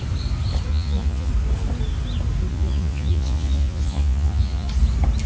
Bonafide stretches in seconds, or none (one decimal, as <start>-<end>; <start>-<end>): 0.0-0.7; 1.3-2.5; 4.7-5.3